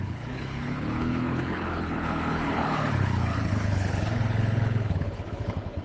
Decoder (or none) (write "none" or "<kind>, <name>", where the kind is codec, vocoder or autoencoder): codec, HILCodec